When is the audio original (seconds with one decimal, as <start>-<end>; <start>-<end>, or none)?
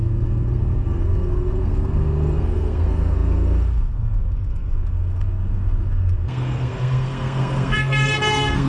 none